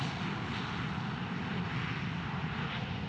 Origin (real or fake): real